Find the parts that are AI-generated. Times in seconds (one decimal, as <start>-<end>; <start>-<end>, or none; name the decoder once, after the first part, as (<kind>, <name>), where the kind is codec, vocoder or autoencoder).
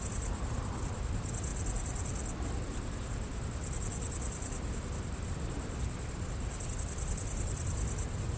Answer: 0.0-1.5 (vocoder, BigVGAN v2); 5.3-8.4